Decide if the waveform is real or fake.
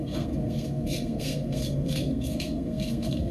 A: fake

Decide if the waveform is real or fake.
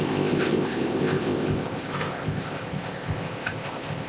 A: fake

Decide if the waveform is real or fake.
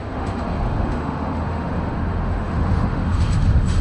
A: fake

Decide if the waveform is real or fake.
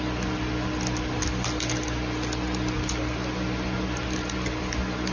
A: real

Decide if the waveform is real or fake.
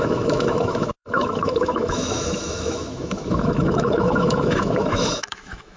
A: fake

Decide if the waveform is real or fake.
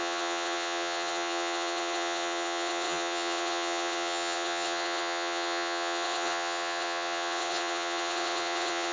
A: fake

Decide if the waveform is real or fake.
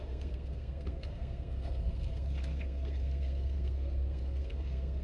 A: fake